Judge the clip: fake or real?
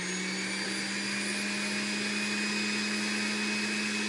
real